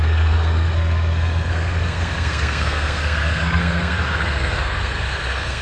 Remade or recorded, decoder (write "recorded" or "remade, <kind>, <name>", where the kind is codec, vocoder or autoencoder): remade, codec, SNAC